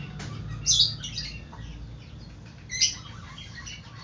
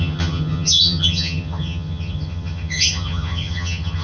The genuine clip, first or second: first